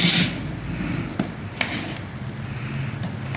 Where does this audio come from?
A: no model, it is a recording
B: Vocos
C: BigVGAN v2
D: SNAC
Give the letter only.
A